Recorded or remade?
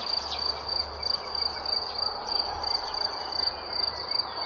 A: recorded